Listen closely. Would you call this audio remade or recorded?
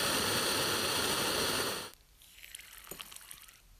recorded